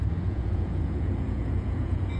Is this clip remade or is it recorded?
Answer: remade